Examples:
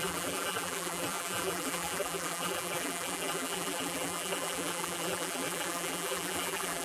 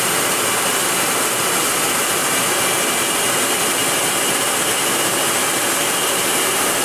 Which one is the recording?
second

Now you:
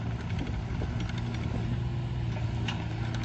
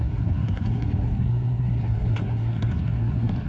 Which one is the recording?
first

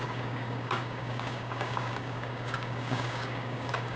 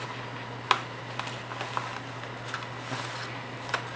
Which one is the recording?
second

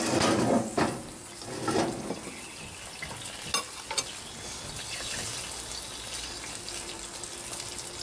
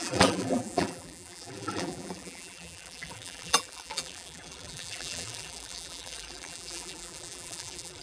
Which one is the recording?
first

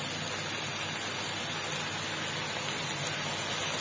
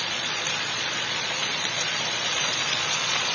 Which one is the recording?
first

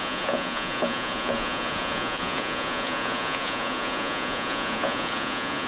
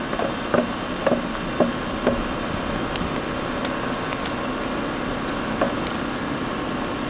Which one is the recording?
second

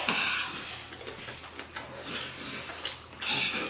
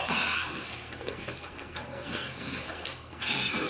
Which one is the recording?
first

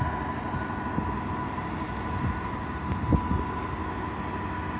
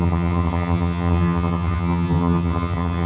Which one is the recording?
first